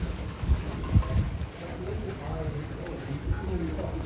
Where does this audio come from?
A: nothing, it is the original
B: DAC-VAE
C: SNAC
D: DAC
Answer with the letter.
D